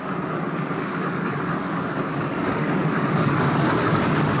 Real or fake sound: fake